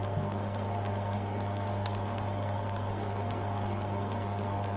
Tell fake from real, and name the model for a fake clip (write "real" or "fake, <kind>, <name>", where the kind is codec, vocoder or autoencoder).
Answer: fake, codec, SNAC